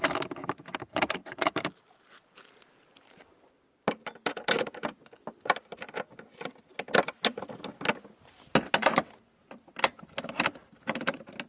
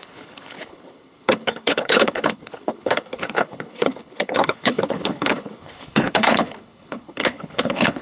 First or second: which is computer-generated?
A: second